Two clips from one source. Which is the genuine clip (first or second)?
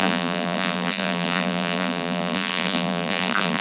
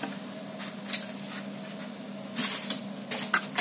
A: second